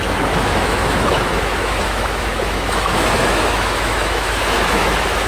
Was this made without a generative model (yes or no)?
no